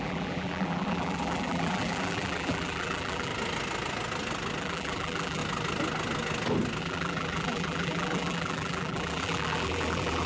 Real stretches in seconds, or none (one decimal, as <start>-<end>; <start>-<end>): 3.3-4.6; 5.4-6.8